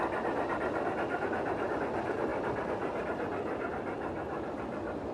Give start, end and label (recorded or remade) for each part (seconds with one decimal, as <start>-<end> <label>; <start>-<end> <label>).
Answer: 0.0-5.1 recorded